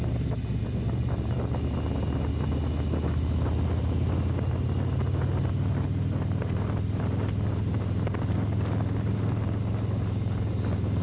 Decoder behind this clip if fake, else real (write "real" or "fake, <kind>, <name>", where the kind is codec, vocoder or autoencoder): real